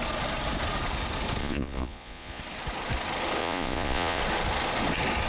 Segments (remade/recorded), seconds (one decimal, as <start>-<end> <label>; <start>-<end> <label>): 0.0-1.4 recorded; 1.4-2.4 remade; 2.4-3.4 recorded; 3.4-4.2 remade; 4.2-5.3 recorded